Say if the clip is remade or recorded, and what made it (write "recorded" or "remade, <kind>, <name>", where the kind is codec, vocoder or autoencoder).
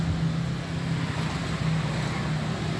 recorded